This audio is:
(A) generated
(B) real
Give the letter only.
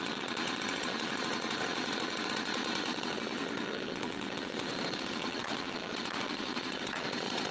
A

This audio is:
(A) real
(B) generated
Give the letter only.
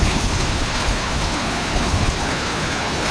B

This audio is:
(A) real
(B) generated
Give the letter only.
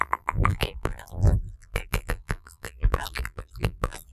B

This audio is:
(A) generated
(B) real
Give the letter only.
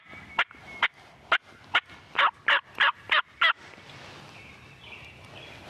B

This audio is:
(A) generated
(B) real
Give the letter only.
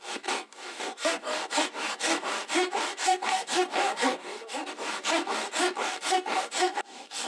A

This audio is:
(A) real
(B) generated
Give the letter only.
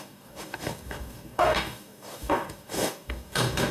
B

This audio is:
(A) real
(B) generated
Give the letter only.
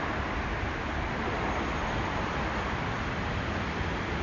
A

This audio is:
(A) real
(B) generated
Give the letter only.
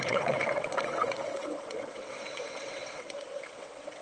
B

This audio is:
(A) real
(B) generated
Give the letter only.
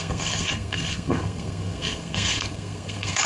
B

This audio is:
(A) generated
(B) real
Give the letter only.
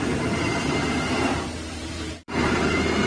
A